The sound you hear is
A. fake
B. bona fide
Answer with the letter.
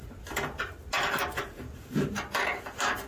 B